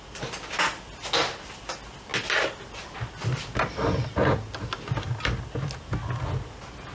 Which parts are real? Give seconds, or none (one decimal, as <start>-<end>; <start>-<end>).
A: 0.0-6.9